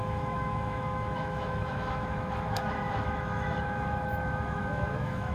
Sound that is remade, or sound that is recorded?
remade